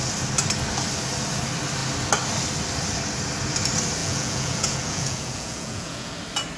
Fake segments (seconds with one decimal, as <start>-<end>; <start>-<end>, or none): 4.0-6.1